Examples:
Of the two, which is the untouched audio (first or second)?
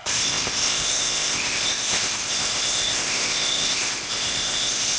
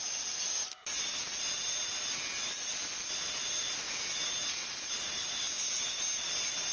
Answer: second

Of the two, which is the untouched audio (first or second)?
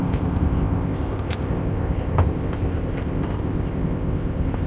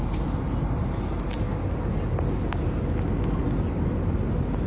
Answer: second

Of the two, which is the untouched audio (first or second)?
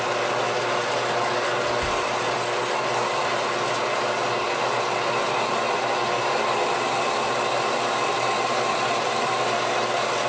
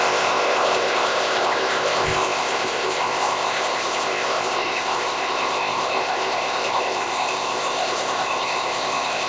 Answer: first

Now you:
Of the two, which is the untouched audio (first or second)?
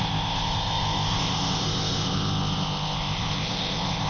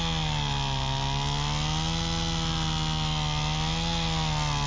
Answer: second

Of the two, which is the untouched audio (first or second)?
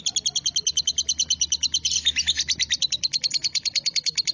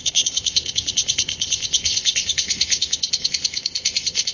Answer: first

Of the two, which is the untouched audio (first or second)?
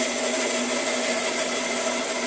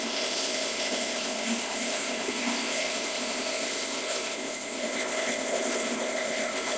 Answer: first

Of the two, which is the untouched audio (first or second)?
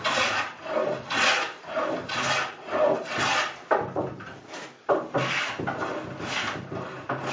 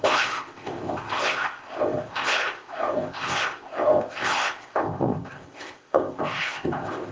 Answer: first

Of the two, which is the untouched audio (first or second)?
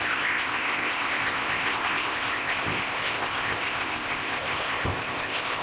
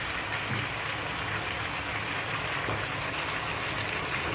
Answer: second